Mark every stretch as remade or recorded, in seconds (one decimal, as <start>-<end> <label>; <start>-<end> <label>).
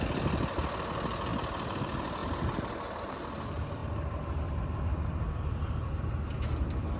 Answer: 0.0-7.0 recorded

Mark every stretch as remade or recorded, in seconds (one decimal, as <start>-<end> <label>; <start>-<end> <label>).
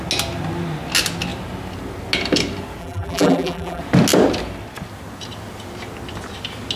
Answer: 0.0-2.8 recorded; 2.8-3.8 remade; 3.8-6.8 recorded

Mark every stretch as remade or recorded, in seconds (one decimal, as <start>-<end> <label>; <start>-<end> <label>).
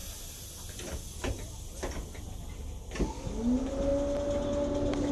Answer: 0.0-0.5 remade; 0.5-5.1 recorded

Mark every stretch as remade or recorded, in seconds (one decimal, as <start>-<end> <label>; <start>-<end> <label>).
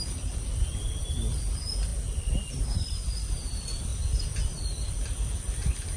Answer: 0.0-3.9 remade; 3.9-4.9 recorded; 4.9-6.0 remade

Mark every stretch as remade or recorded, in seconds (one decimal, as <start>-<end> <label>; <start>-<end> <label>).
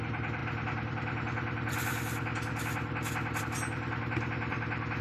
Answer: 0.0-5.0 recorded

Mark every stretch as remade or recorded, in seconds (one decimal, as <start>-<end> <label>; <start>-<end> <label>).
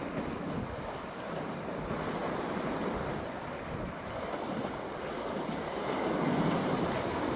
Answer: 0.0-7.4 recorded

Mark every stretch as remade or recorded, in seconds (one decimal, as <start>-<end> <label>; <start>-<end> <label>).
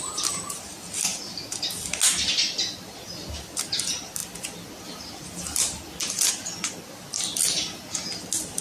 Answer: 0.0-1.1 recorded; 1.1-1.7 remade; 1.7-4.2 recorded; 4.2-6.3 remade; 6.3-8.6 recorded